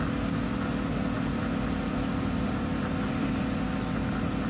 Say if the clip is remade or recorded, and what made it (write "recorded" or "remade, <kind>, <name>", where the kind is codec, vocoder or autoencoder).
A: recorded